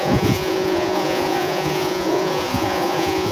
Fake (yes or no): yes